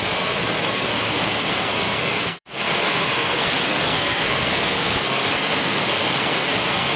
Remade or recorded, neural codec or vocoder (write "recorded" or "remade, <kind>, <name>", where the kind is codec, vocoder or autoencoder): remade, codec, SNAC